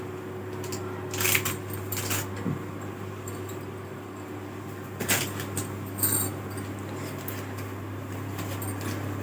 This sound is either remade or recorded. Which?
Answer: remade